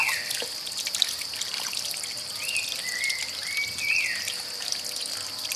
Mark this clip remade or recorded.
recorded